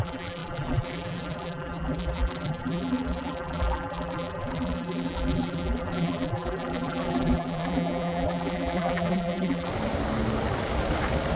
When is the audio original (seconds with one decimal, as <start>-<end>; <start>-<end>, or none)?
9.7-11.4